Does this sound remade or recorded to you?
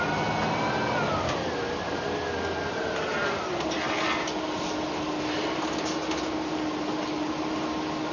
recorded